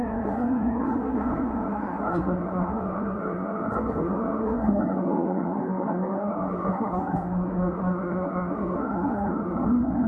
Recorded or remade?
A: remade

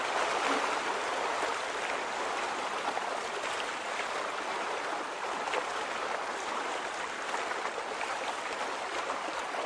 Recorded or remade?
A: recorded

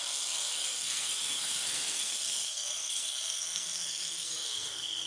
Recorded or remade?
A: remade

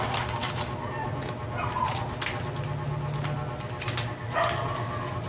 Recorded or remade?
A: recorded